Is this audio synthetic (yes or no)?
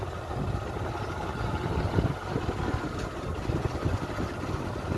no